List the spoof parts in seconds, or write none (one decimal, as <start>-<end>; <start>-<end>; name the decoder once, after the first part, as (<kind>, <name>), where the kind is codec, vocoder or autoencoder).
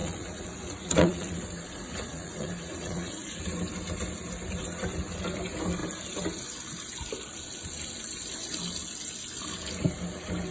0.0-3.4 (vocoder, Vocos)